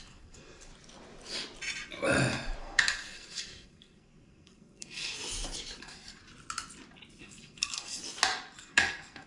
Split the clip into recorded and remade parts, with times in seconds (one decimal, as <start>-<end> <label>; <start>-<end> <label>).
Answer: 0.0-0.7 remade; 0.7-2.6 recorded; 2.6-5.2 remade; 5.2-5.8 recorded; 5.8-6.2 remade; 6.2-7.2 recorded; 7.2-8.0 remade; 8.0-8.6 recorded; 8.6-9.3 remade